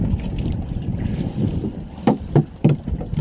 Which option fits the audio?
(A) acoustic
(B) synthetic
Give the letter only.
B